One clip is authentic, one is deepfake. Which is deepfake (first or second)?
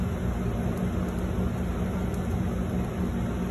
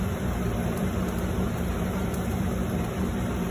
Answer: second